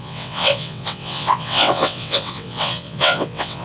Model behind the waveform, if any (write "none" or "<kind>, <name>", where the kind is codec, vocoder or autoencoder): vocoder, WaveNeXt